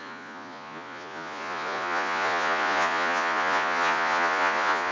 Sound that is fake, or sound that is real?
fake